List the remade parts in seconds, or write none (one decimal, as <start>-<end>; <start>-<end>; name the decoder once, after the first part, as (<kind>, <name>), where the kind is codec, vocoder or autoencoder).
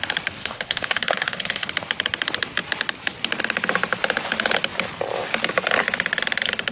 0.4-1.7 (codec, HILCodec)